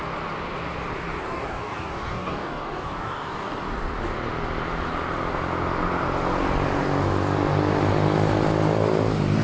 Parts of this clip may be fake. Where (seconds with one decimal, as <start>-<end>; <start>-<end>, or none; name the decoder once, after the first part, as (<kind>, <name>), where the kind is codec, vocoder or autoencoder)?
1.2-3.5 (codec, DAC)